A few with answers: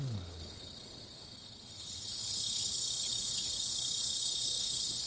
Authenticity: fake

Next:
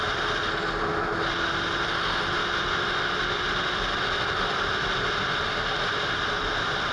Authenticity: real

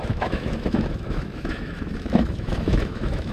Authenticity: fake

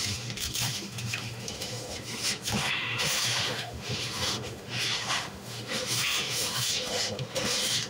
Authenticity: fake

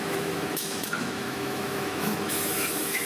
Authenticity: fake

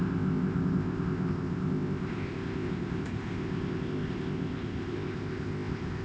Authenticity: fake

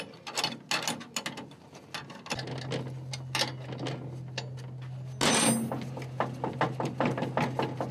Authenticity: real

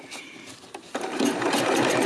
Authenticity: fake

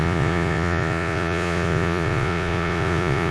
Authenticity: fake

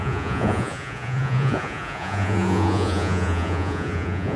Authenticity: fake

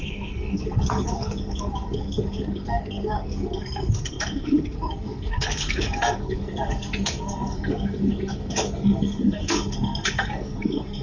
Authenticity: fake